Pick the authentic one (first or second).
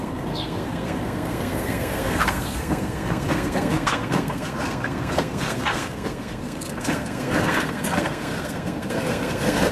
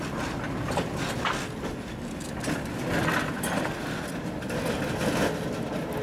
second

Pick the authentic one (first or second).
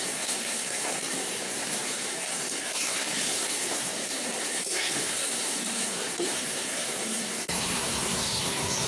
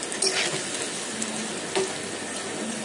second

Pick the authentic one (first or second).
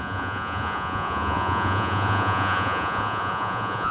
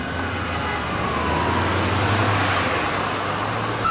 second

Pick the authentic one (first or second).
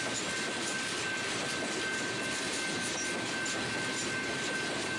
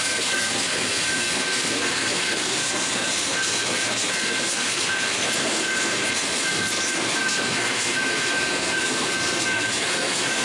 first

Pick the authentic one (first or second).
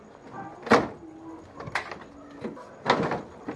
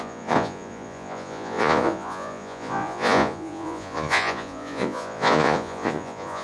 first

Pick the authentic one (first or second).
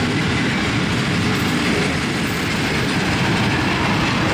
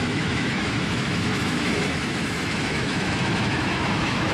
first